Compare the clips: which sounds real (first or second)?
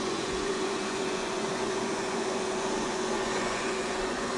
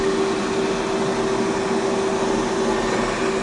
second